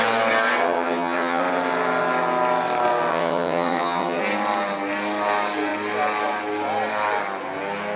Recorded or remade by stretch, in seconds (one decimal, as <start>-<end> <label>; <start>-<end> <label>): 0.0-0.6 recorded; 0.6-1.4 remade; 1.4-3.1 recorded; 3.1-4.2 remade; 4.2-8.0 recorded